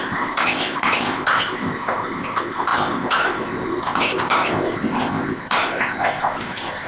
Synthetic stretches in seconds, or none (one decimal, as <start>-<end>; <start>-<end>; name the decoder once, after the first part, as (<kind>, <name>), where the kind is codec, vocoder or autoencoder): 0.0-6.9 (codec, ZipCodec)